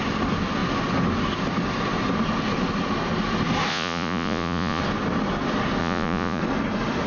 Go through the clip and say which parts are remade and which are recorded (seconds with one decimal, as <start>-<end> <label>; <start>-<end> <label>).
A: 0.0-3.7 recorded; 3.7-4.8 remade; 4.8-5.8 recorded; 5.8-6.4 remade; 6.4-7.1 recorded